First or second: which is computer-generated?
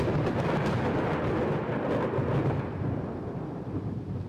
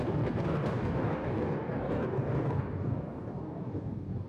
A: second